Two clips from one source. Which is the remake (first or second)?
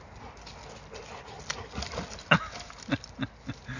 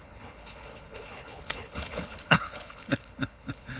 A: second